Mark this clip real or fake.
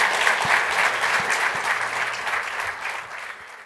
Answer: real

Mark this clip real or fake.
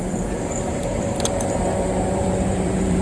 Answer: fake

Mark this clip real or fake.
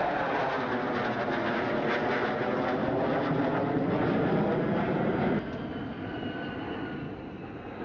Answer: real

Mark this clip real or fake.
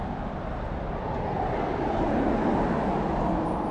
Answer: real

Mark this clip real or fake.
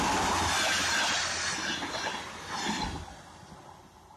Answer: real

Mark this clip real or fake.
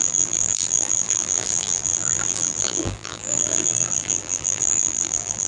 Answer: fake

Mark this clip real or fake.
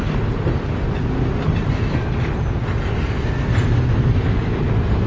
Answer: real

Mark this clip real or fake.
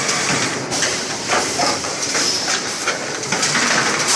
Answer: fake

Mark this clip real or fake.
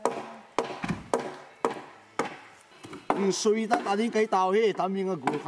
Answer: real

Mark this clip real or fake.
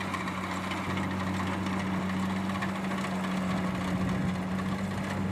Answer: real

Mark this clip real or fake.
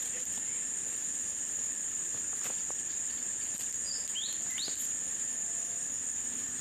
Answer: real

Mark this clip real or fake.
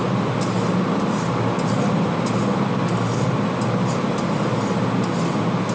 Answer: real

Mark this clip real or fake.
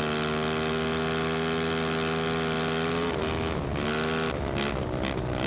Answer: real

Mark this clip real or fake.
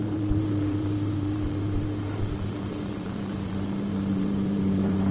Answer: fake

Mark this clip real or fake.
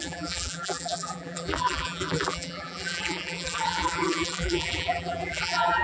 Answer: fake